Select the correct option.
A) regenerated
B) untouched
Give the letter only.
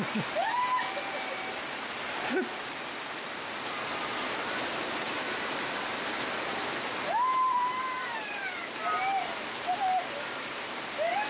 B